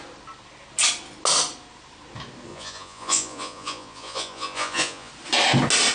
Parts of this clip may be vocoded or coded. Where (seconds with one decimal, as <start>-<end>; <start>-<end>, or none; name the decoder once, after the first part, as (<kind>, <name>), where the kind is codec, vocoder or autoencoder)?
2.5-5.1 (vocoder, Vocos)